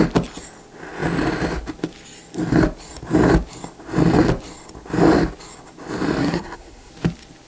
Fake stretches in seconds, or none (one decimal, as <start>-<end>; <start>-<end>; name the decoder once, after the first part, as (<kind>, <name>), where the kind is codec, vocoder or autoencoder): 6.2-6.9 (codec, SNAC)